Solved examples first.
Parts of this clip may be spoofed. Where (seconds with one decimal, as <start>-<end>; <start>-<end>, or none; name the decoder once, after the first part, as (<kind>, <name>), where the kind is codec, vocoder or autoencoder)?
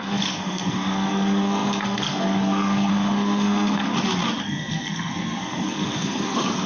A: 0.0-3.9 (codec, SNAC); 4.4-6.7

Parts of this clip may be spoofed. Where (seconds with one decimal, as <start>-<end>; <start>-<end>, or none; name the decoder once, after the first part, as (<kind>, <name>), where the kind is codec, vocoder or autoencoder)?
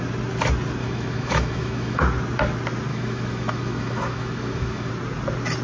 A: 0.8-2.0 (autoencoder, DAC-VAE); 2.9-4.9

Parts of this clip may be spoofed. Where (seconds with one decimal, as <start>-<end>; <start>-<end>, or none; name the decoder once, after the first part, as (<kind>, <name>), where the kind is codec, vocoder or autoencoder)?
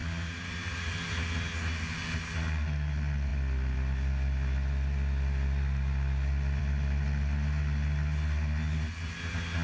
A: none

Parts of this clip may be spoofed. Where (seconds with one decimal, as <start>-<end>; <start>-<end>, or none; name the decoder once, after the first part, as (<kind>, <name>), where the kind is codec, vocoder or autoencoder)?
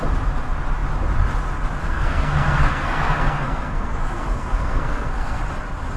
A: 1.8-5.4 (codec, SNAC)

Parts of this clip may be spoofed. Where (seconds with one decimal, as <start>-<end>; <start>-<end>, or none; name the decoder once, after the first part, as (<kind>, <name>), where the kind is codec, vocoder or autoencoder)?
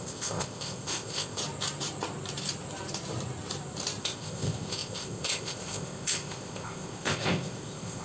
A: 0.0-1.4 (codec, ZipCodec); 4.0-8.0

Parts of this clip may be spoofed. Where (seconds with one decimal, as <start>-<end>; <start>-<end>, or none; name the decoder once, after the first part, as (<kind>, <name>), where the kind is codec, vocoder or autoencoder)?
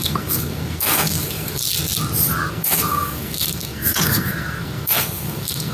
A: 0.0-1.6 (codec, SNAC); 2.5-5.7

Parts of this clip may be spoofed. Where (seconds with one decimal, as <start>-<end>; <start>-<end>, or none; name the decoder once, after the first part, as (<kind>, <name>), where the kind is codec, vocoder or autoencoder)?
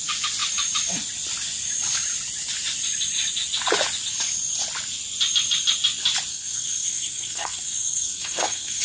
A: 6.3-8.8 (codec, SNAC)